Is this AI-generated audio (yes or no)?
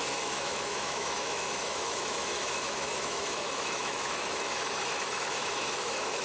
yes